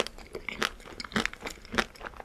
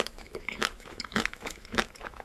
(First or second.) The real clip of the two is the first